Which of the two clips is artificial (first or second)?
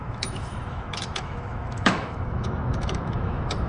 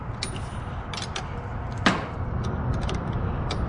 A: first